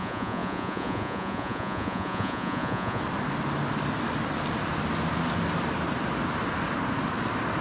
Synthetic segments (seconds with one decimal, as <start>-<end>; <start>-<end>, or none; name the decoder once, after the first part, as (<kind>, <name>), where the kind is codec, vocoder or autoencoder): 0.0-3.0 (vocoder, Vocos)